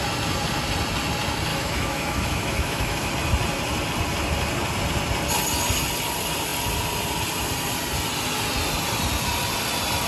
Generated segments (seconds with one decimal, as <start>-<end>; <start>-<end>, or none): 1.5-3.1